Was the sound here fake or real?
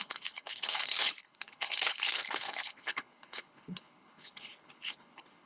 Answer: fake